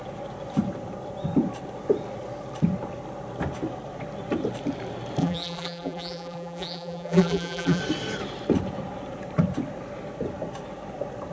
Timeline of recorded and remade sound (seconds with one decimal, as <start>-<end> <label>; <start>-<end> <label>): 0.0-5.2 recorded; 5.2-7.8 remade; 7.8-11.3 recorded